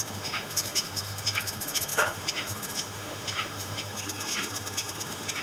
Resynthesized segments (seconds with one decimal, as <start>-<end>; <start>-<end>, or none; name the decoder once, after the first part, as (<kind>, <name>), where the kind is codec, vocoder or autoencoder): 0.0-5.4 (autoencoder, DAC-VAE)